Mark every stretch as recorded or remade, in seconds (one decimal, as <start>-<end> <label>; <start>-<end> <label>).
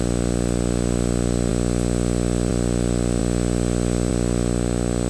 0.0-5.1 recorded